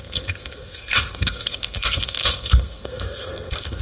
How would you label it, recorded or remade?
remade